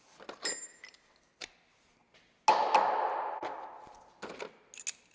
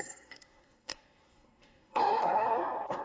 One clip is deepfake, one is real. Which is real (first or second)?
first